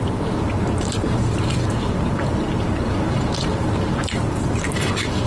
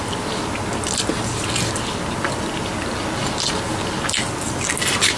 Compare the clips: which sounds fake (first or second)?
first